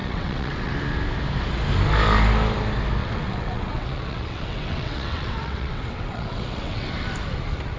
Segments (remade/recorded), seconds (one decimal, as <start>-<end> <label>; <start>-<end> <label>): 0.0-0.7 remade; 0.7-3.0 recorded; 3.0-6.9 remade; 6.9-7.8 recorded

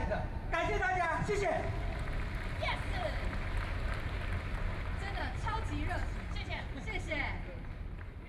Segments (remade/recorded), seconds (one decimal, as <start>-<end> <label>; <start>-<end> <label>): 0.0-8.3 recorded

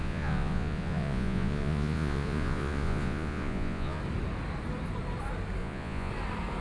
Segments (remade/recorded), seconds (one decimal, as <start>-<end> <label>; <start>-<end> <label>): 0.0-4.0 remade; 4.0-5.6 recorded; 5.6-6.1 remade; 6.1-6.6 recorded

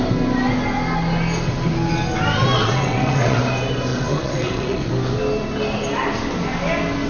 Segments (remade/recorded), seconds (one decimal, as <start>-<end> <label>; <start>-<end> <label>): 0.0-2.6 recorded; 2.6-3.4 remade; 3.4-3.9 recorded; 3.9-4.9 remade; 4.9-7.1 recorded

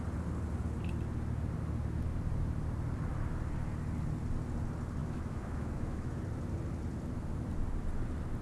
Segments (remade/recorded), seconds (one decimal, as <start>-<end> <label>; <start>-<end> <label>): 0.0-5.0 recorded; 5.0-6.2 remade; 6.2-8.4 recorded

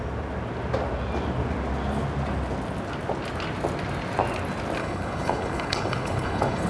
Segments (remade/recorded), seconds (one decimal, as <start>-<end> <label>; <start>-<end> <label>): 0.0-4.8 recorded; 4.8-6.7 remade